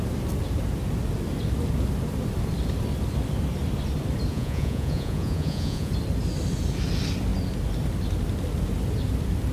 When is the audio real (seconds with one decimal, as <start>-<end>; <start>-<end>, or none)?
0.0-4.3; 5.9-9.5